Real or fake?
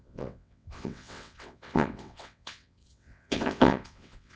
fake